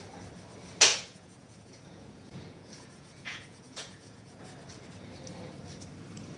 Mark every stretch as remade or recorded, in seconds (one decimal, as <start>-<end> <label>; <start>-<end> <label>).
0.0-0.9 recorded; 0.9-4.4 remade; 4.4-6.4 recorded